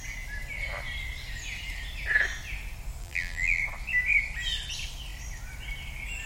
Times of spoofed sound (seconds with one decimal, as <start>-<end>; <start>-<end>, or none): 3.0-3.6